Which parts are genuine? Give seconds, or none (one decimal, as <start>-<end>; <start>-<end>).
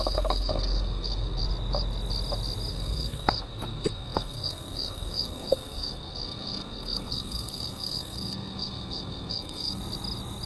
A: 1.4-2.7; 9.8-10.5